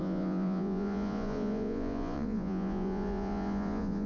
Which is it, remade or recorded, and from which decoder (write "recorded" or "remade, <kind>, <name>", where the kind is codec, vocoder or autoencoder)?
remade, vocoder, Vocos